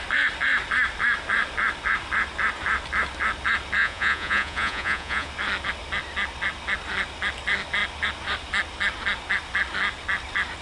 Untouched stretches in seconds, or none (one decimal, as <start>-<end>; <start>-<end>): 0.0-3.8; 5.3-10.6

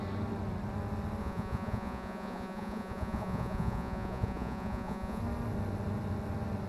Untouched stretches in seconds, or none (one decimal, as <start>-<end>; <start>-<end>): 0.0-1.2; 5.2-6.7

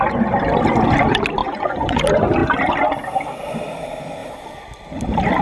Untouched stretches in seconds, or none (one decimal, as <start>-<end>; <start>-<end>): 0.0-1.4; 2.0-5.4

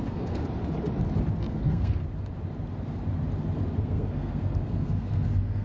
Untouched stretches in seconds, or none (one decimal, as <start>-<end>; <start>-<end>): 0.4-1.5; 2.0-3.8

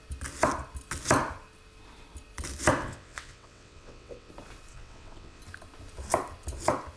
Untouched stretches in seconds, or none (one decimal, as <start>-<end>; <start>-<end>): 0.0-2.8; 4.3-4.7; 5.4-7.0

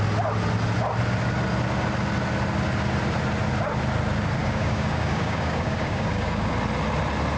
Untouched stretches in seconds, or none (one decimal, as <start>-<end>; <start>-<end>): 0.0-4.4; 6.5-7.4

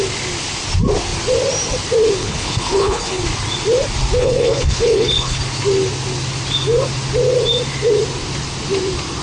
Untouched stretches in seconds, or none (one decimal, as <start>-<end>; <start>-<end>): 0.0-2.2; 3.2-4.2; 5.4-9.2

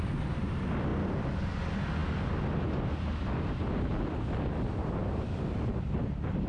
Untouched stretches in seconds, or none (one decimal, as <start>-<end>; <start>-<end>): 0.0-0.9; 1.6-5.0; 5.7-6.5